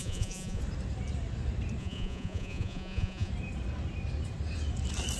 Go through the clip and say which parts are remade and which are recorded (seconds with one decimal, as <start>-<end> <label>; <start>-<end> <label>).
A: 0.0-0.6 remade; 0.6-1.8 recorded; 1.8-3.3 remade; 3.3-5.2 recorded